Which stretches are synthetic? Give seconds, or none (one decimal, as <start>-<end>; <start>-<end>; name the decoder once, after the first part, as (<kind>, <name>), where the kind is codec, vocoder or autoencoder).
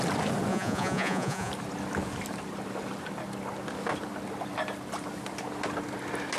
0.5-1.5 (vocoder, Vocos)